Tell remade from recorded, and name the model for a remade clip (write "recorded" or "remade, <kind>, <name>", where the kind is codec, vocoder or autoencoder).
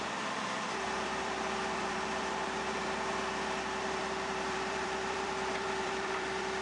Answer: remade, vocoder, BigVGAN v2